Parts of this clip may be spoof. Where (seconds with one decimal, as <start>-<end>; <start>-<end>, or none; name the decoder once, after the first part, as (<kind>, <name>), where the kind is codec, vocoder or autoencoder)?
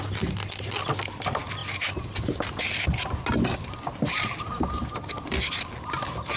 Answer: none